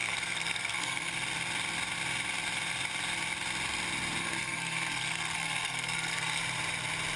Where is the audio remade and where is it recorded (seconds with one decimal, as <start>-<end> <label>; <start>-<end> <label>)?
0.0-1.1 remade; 1.1-4.2 recorded; 4.2-6.4 remade; 6.4-7.2 recorded